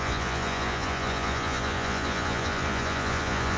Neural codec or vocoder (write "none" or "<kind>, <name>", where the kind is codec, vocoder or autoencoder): vocoder, Vocos